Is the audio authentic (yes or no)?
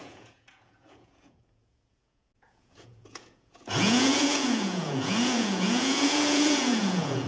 no